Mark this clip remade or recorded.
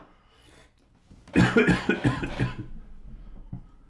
recorded